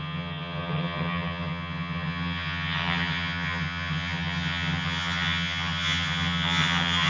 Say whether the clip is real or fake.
fake